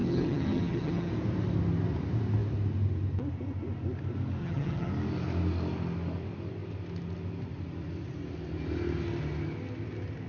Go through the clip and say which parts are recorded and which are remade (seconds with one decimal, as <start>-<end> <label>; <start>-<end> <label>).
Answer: 0.0-1.1 remade; 1.1-4.4 recorded; 4.4-4.9 remade; 4.9-10.3 recorded